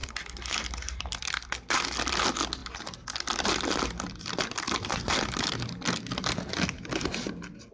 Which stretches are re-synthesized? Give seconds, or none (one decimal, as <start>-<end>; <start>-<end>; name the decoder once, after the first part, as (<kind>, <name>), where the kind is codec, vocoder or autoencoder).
0.0-2.1 (vocoder, BigVGAN v2); 2.6-5.5